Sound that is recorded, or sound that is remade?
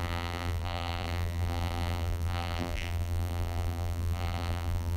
remade